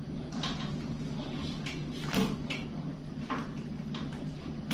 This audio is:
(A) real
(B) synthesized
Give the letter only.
A